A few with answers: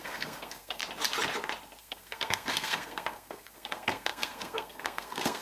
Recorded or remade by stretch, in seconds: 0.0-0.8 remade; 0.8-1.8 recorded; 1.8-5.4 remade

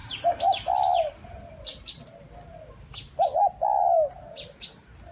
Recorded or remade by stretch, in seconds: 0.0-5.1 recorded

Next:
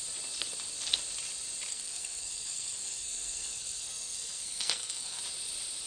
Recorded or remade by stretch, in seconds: 0.0-1.7 recorded; 1.7-5.2 remade; 5.2-5.9 recorded

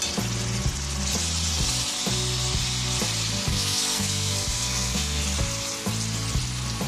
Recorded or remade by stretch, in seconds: 0.0-3.5 recorded; 3.5-5.2 remade; 5.2-6.9 recorded